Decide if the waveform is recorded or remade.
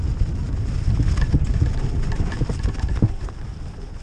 recorded